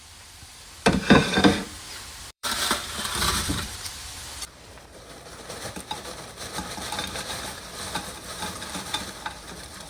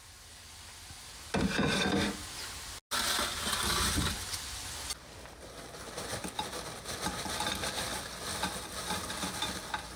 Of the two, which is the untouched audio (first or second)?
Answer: second